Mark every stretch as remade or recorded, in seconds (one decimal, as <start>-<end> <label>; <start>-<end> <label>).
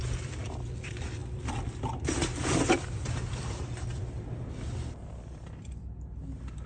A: 0.0-6.7 recorded